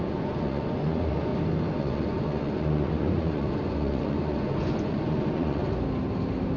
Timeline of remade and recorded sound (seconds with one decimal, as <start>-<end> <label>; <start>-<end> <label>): 0.0-1.3 remade; 1.3-1.8 recorded; 1.8-5.6 remade; 5.6-6.6 recorded